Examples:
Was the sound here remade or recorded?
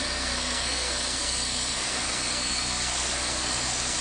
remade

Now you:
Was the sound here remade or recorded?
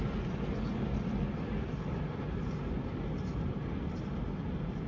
recorded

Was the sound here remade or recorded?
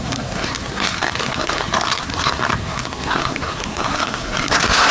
remade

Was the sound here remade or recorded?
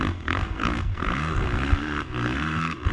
remade